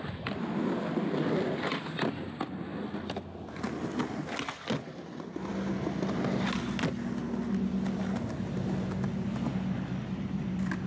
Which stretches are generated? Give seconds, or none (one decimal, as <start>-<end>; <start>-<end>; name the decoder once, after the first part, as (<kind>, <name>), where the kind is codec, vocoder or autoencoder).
none